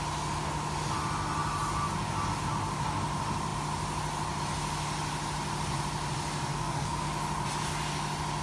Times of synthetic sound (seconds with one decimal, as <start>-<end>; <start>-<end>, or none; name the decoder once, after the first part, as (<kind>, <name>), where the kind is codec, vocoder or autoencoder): 6.5-7.1 (codec, SNAC)